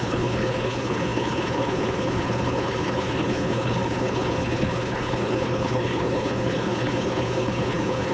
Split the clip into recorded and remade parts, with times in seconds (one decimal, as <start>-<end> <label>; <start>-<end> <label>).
0.0-8.1 remade